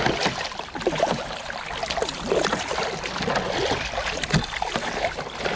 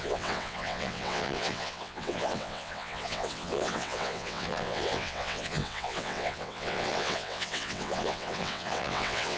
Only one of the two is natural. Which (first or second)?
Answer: first